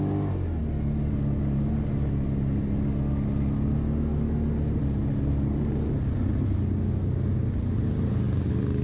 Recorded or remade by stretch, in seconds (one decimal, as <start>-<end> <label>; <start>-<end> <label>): 0.0-8.8 recorded